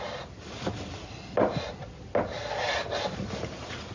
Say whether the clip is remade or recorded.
recorded